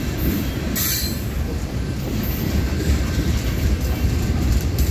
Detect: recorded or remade remade